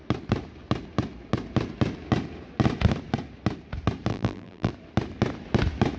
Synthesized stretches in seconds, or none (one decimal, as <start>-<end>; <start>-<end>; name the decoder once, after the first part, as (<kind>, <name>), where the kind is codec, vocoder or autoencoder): 4.1-4.7 (vocoder, BigVGAN v2)